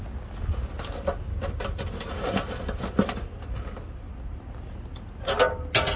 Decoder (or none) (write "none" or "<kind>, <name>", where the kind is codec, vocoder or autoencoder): none